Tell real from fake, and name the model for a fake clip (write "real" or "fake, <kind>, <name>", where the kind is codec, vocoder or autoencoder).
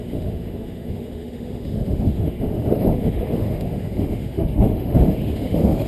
fake, autoencoder, DAC-VAE